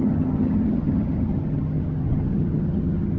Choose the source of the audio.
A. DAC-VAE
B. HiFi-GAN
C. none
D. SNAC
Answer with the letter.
B